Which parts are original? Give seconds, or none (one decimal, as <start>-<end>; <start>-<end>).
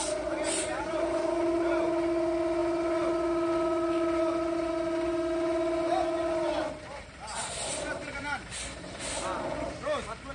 0.0-10.3